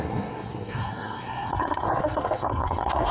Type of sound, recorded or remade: remade